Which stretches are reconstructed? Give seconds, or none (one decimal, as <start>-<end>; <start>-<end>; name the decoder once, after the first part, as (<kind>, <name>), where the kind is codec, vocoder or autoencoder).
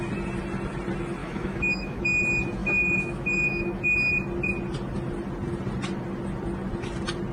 1.2-2.0 (autoencoder, DAC-VAE); 2.6-3.8